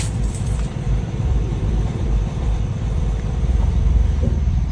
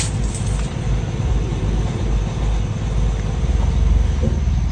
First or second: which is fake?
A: first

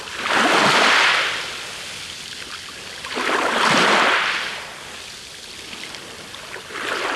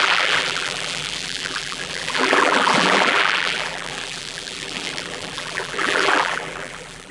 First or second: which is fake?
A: second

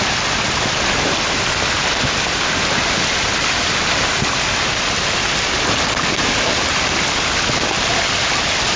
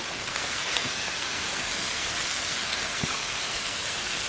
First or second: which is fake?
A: second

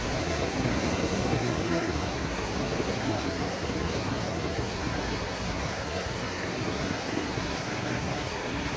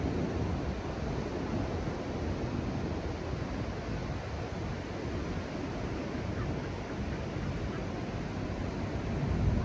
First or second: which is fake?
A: first